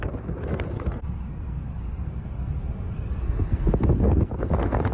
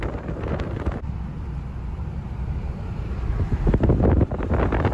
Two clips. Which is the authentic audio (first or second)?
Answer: second